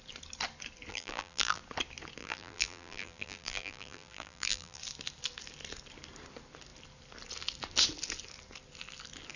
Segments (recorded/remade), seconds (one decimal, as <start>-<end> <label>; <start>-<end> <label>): 0.0-0.9 recorded; 0.9-1.6 remade; 1.6-2.2 recorded; 2.2-4.8 remade; 4.8-9.4 recorded